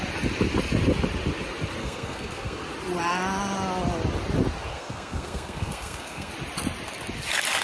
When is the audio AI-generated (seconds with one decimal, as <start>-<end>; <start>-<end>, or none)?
1.8-2.6; 4.7-6.3